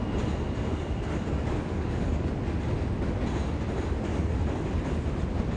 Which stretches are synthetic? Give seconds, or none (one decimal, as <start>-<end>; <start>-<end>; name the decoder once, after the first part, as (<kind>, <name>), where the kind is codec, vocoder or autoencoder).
0.7-2.3 (codec, DAC); 4.1-4.8

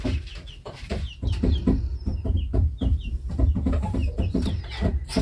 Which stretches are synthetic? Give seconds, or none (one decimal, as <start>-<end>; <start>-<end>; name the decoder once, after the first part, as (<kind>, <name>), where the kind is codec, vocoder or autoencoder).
0.6-3.3 (vocoder, BigVGAN v2); 4.0-4.6